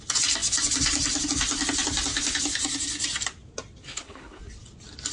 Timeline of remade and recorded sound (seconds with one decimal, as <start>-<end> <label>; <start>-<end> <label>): 0.0-3.9 recorded; 3.9-4.4 remade; 4.4-5.1 recorded